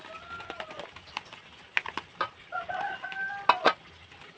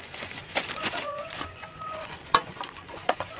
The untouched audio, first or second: first